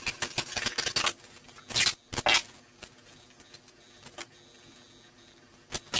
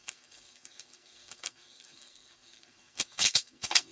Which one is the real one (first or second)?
first